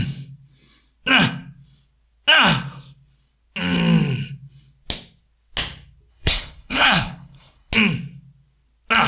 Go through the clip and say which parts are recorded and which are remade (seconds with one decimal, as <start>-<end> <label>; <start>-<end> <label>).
0.0-6.1 recorded; 6.1-7.7 remade; 7.7-9.1 recorded